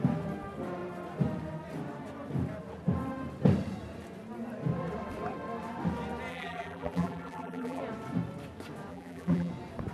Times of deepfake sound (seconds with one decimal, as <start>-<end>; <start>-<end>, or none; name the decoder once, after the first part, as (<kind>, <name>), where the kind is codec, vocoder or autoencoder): 6.3-7.8 (vocoder, BigVGAN v2); 8.9-9.5